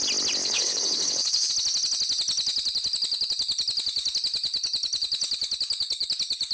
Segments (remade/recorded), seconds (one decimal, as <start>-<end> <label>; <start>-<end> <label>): 0.0-0.4 recorded; 0.4-1.5 remade; 1.5-6.5 recorded